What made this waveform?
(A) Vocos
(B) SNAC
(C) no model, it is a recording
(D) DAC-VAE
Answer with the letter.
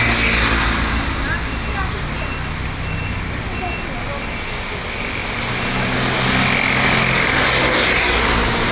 C